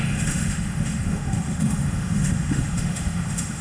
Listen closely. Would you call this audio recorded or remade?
remade